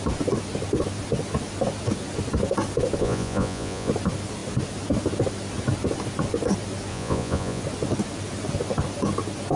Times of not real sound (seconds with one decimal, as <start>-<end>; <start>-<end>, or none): 3.0-3.9; 6.9-7.6